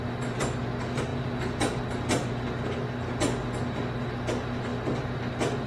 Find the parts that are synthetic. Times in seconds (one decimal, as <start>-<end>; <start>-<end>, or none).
none

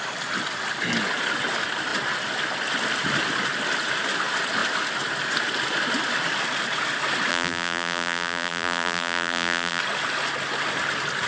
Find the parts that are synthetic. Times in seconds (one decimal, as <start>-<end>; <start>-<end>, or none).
7.3-9.8

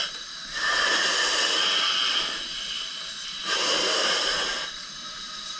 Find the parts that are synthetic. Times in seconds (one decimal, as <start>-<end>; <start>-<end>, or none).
0.0-1.0; 3.4-5.6